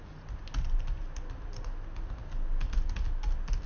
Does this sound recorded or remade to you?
recorded